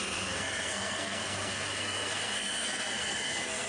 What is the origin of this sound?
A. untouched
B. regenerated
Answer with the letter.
B